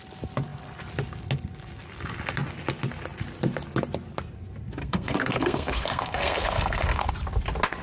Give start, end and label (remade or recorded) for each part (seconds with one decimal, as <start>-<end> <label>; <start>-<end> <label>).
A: 0.0-4.8 recorded; 4.8-7.1 remade; 7.1-7.8 recorded